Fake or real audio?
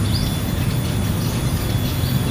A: real